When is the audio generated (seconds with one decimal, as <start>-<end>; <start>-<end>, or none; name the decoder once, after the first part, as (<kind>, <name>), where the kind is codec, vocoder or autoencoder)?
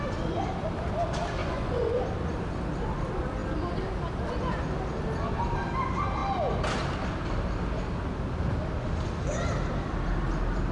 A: 1.4-2.0 (vocoder, Vocos)